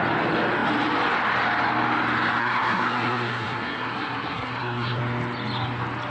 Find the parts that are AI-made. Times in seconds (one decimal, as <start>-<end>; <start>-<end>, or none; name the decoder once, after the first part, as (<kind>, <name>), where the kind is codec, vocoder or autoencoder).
2.4-5.0 (codec, SNAC)